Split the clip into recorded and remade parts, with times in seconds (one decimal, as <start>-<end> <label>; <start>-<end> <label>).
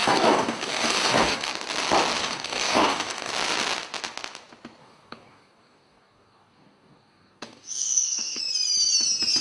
0.0-1.5 remade; 1.5-2.2 recorded; 2.2-3.3 remade; 3.3-4.8 recorded; 4.8-8.4 remade; 8.4-9.4 recorded